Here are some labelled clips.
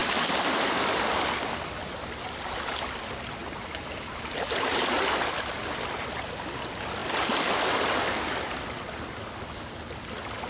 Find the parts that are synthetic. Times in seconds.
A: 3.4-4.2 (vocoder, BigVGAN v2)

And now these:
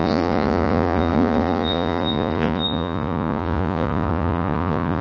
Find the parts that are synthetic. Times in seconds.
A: 0.0-5.0 (vocoder, Vocos)

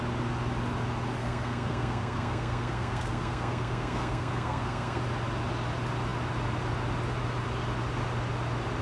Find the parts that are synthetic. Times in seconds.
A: 1.2-5.0 (codec, SNAC)

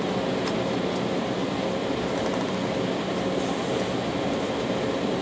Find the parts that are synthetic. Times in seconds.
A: 1.4-2.5 (vocoder, BigVGAN v2); 4.1-4.7

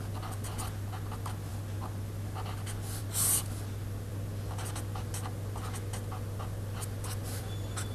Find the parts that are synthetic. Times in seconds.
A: none

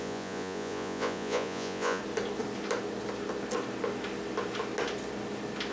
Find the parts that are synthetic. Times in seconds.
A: 0.0-2.0 (vocoder, Vocos)

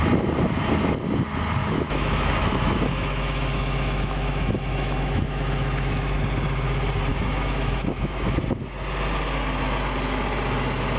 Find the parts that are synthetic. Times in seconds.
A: 1.6-6.2 (autoencoder, DAC-VAE); 7.1-8.4

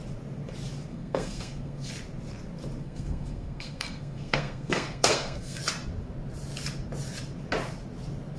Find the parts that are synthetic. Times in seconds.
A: 0.9-1.9 (codec, SNAC); 2.8-5.6